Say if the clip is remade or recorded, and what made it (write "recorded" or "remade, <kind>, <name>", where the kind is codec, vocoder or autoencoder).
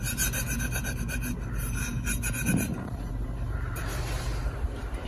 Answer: remade, vocoder, BigVGAN v2